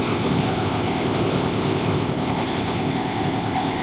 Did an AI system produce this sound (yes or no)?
yes